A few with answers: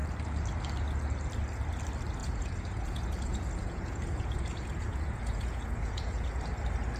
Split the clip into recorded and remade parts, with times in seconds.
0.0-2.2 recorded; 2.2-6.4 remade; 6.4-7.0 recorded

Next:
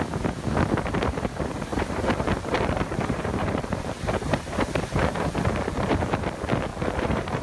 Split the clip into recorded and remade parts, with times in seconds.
0.0-1.7 recorded; 1.7-5.3 remade; 5.3-6.7 recorded; 6.7-7.4 remade